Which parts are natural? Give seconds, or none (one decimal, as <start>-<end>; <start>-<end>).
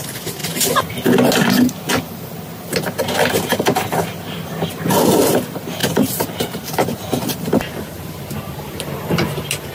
0.0-5.8; 8.9-9.7